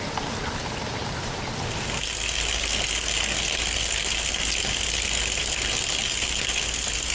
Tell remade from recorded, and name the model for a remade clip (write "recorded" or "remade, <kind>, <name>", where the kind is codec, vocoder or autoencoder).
recorded